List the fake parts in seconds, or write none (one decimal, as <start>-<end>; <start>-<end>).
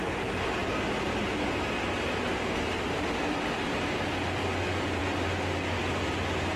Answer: none